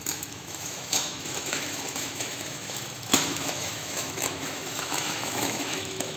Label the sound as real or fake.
fake